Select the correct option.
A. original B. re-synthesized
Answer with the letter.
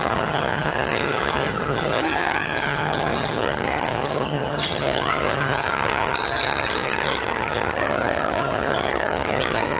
B